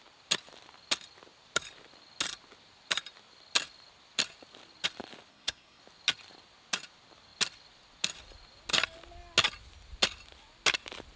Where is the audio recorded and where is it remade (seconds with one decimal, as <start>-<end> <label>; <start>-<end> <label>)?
0.0-5.3 recorded; 5.3-5.8 remade; 5.8-11.2 recorded